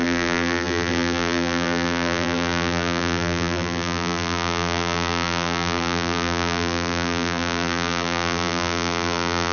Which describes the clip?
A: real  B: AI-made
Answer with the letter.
B